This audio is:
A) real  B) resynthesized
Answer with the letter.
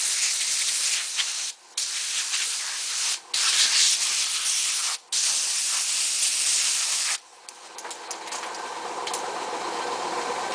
A